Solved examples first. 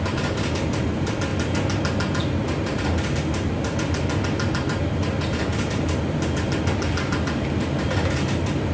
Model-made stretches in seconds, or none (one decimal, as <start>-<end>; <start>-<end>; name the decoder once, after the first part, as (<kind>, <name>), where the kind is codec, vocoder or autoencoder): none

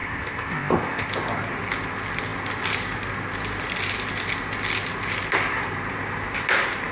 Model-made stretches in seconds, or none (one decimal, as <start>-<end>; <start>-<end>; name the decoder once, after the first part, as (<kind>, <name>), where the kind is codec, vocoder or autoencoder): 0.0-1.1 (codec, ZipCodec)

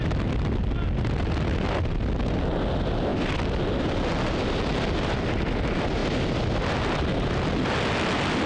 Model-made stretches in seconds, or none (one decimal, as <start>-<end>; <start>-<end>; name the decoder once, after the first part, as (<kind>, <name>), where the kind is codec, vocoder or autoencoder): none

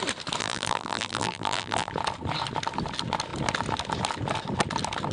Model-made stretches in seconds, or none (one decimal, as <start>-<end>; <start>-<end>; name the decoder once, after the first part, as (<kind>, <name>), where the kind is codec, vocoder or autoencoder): 0.4-1.9 (vocoder, BigVGAN v2)